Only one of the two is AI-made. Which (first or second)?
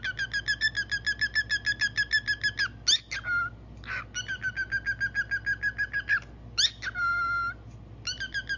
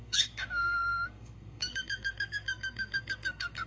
second